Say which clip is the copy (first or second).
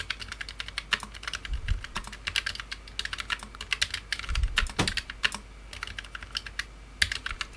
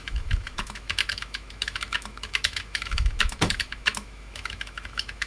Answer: second